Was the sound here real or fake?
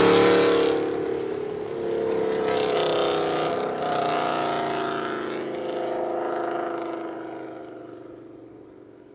real